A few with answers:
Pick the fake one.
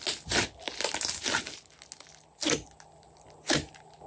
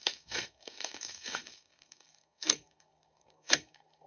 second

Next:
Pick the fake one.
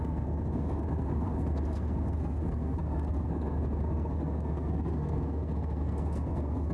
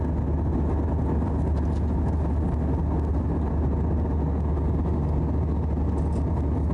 first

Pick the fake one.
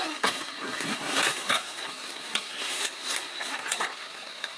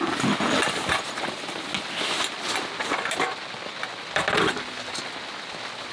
first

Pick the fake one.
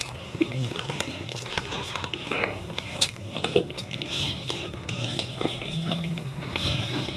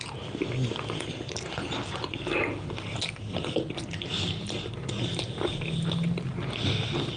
first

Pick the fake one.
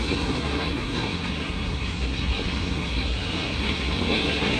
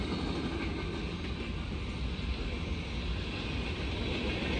first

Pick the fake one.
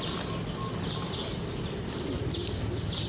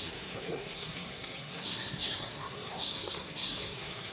second